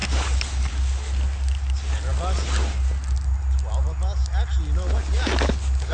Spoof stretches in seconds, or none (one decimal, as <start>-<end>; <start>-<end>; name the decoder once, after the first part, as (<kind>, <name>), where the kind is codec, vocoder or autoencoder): none